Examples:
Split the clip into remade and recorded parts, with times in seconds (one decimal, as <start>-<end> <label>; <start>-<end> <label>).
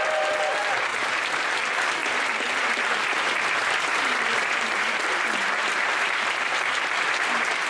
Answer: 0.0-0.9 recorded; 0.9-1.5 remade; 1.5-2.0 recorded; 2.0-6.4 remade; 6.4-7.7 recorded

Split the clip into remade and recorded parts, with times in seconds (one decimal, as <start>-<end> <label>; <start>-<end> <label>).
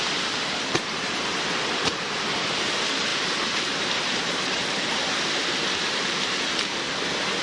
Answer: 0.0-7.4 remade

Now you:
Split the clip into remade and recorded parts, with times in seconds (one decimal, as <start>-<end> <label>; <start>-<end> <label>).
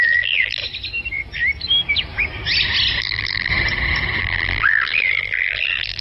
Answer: 0.0-0.6 remade; 0.6-3.0 recorded; 3.0-3.5 remade; 3.5-4.2 recorded; 4.2-6.0 remade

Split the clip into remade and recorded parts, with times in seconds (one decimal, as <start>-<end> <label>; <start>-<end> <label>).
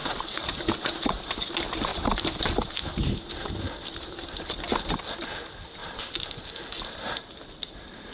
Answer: 0.0-1.4 remade; 1.4-1.9 recorded; 1.9-4.4 remade; 4.4-5.8 recorded; 5.8-7.2 remade; 7.2-8.1 recorded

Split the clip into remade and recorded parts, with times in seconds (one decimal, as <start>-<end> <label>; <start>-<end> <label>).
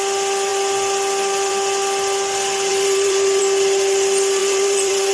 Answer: 0.0-2.7 recorded; 2.7-3.4 remade; 3.4-4.4 recorded; 4.4-5.1 remade